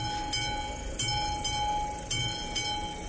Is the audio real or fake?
real